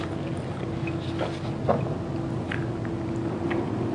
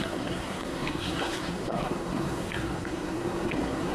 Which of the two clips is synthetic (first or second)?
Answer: second